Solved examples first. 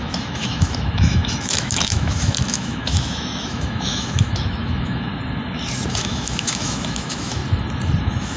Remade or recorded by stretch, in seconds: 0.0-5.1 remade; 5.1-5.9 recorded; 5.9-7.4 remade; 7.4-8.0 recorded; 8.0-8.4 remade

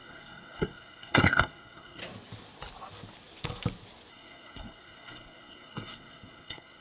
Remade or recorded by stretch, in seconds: 0.0-2.0 remade; 2.0-4.1 recorded; 4.1-6.8 remade

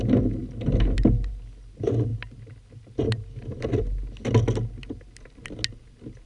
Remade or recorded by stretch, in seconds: 0.0-6.3 recorded

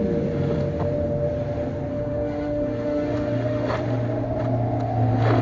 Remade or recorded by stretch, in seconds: 0.0-1.9 recorded; 1.9-3.7 remade; 3.7-5.4 recorded

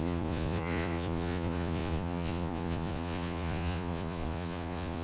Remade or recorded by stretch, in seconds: 0.0-5.0 remade

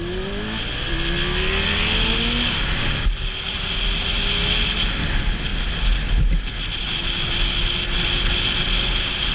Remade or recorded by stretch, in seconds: 0.0-9.3 recorded

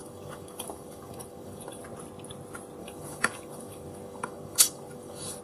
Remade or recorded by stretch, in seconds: 0.0-1.8 remade; 1.8-2.8 recorded; 2.8-5.4 remade

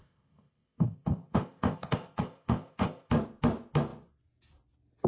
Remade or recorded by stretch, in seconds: 0.0-3.1 remade; 3.1-5.1 recorded